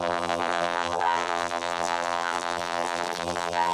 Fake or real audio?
fake